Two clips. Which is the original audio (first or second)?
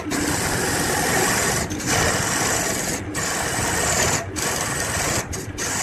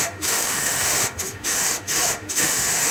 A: first